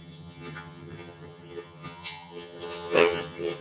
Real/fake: fake